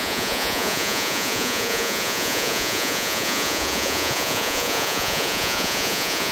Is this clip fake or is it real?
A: fake